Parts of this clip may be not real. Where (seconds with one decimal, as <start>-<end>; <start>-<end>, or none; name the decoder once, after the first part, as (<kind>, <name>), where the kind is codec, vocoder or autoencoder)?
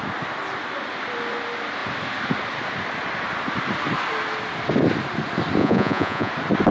5.6-6.3 (vocoder, Vocos)